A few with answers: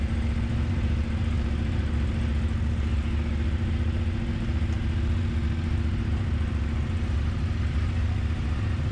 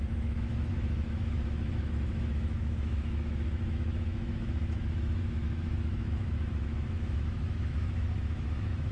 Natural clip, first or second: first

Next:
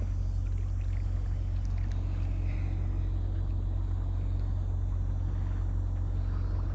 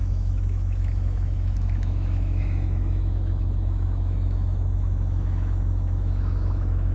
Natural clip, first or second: first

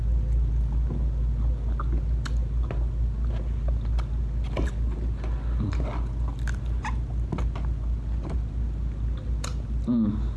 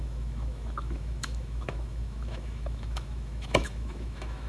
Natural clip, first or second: first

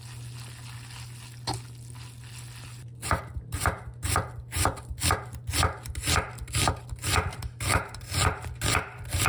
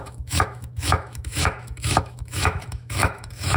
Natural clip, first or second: first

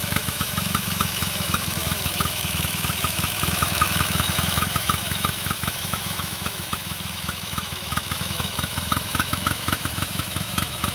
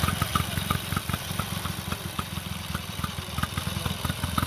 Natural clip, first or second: second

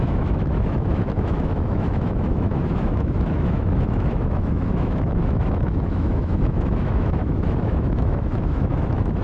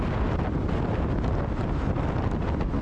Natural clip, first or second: second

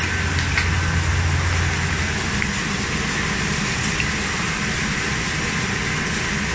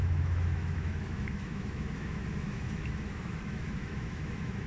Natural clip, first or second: first